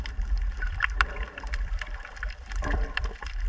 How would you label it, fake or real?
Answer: fake